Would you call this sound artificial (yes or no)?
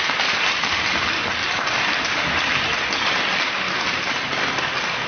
no